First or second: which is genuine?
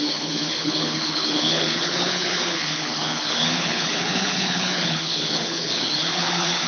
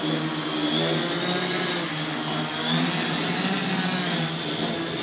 second